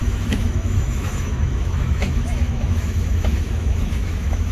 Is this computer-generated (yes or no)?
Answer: yes